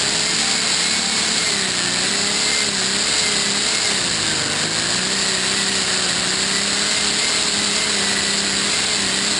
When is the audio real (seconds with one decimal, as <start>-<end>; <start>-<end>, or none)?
0.0-9.4